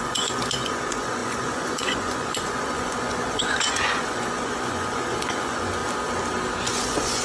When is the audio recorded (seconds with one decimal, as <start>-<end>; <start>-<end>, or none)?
5.8-6.6